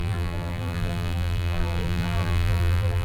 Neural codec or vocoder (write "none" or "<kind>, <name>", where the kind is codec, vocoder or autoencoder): vocoder, BigVGAN v2